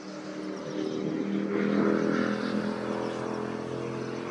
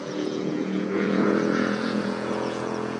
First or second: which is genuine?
first